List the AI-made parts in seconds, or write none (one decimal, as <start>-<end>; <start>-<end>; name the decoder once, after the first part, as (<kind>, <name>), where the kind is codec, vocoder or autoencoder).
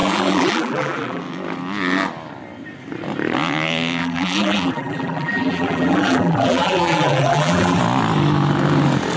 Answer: 0.0-1.2 (vocoder, BigVGAN v2); 4.0-7.8